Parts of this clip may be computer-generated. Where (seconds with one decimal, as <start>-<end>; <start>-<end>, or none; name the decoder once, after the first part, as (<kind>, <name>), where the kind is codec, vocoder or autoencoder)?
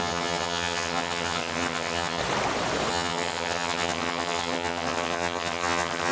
0.0-2.2 (vocoder, HiFi-GAN); 2.9-6.1